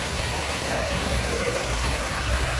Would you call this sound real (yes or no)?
no